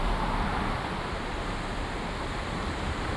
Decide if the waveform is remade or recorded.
remade